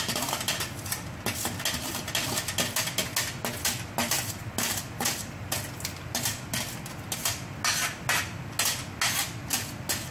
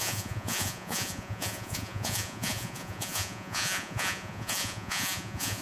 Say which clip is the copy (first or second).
second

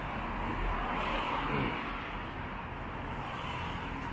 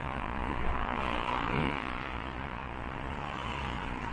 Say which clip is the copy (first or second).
second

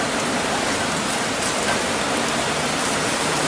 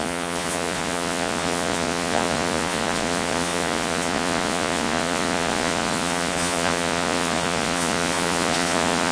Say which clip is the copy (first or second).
second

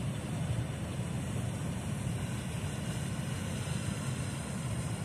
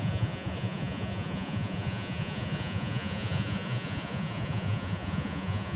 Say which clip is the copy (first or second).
second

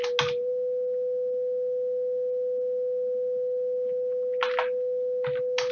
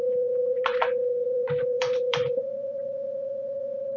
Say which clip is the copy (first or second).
second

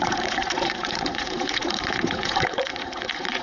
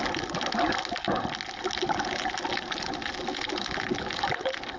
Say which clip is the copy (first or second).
first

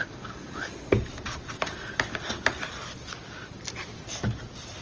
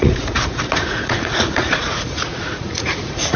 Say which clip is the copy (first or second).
second